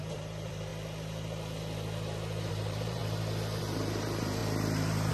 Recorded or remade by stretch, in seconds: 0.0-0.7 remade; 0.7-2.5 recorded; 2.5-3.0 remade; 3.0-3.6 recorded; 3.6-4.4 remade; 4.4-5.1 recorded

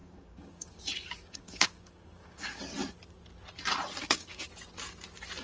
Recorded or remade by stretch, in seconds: 0.0-2.6 remade; 2.6-4.0 recorded; 4.0-4.5 remade; 4.5-5.4 recorded

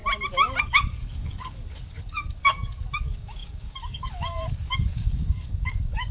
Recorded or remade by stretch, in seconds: 0.0-0.6 recorded; 0.6-6.1 remade

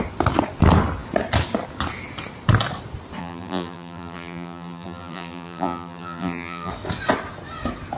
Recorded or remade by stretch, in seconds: 0.0-3.2 recorded; 3.2-6.7 remade; 6.7-8.0 recorded

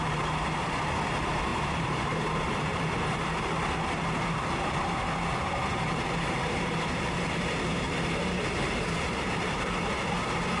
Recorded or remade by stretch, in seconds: 0.0-1.5 recorded; 1.5-5.1 remade; 5.1-5.7 recorded; 5.7-10.0 remade; 10.0-10.6 recorded